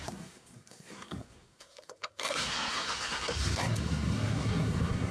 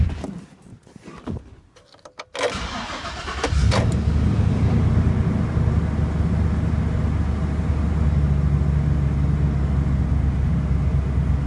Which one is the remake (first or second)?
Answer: first